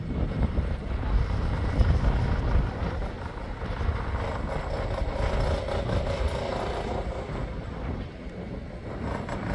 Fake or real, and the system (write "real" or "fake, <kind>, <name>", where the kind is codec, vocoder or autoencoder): real